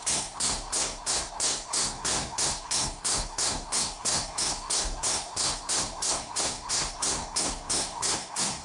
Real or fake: fake